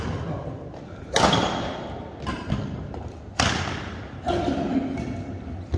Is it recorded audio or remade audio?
recorded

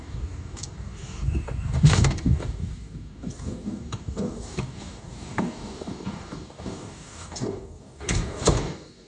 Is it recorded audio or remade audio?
remade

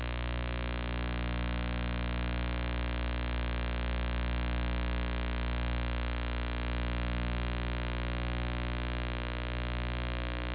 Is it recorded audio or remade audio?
recorded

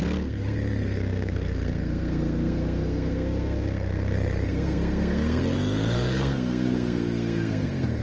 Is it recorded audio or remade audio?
remade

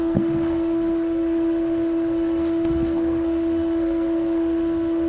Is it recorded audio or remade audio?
remade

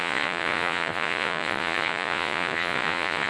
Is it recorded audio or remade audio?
remade